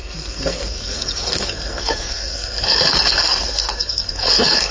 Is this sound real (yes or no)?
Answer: no